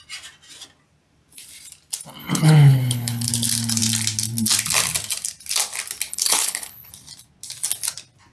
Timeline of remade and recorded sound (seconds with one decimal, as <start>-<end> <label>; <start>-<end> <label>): 0.0-2.2 recorded; 2.2-3.3 remade; 3.3-6.1 recorded; 6.1-6.9 remade; 6.9-8.3 recorded